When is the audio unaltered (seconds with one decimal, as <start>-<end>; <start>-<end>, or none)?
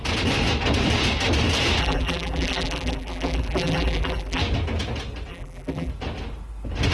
0.0-1.8; 4.4-5.3; 5.9-6.9